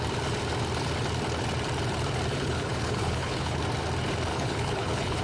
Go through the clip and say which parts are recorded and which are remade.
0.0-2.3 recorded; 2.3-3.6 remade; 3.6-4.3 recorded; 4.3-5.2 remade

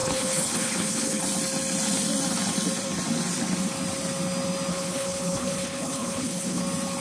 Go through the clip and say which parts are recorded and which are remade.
0.0-1.2 remade; 1.2-4.7 recorded; 4.7-6.6 remade; 6.6-7.0 recorded

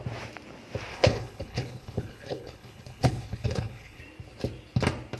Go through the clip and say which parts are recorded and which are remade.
0.0-0.9 recorded; 0.9-4.0 remade; 4.0-5.2 recorded

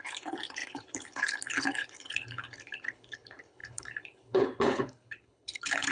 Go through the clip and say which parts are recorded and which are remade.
0.0-5.9 remade

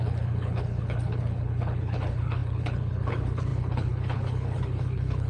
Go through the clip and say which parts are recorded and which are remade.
0.0-5.3 remade